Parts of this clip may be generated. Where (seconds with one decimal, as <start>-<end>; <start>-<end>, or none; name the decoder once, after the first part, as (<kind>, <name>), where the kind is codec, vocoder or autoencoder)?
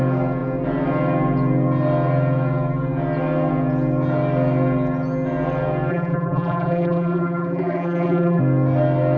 5.9-8.4 (vocoder, BigVGAN v2)